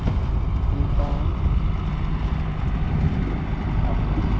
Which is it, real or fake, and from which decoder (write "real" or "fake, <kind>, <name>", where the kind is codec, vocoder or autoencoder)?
real